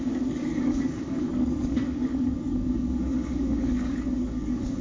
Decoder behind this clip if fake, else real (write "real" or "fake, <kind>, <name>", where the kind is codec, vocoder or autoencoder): fake, codec, DAC